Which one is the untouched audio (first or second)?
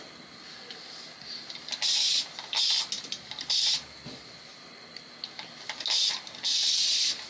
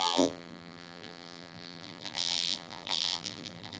first